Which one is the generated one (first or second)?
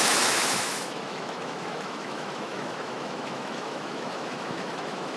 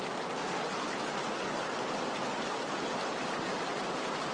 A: first